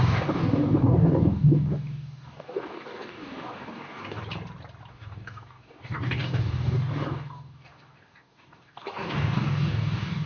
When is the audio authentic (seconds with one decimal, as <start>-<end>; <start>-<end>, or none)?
4.2-4.9